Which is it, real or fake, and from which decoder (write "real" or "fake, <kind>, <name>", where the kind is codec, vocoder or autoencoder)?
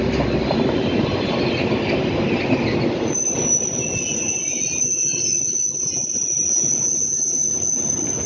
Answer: real